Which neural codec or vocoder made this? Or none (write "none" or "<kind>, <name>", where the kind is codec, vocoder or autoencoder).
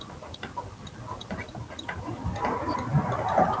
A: none